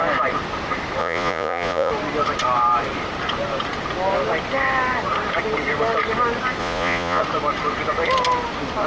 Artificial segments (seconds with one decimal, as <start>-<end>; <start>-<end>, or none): 1.0-1.9; 6.6-7.2